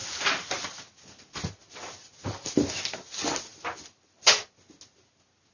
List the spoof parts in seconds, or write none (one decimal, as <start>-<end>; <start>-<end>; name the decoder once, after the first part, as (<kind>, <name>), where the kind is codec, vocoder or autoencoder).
2.0-2.7 (vocoder, BigVGAN v2)